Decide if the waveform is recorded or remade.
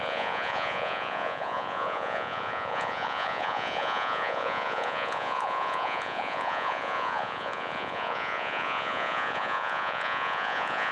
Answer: remade